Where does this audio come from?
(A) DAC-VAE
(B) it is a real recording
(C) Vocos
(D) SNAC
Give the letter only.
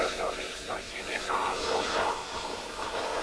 D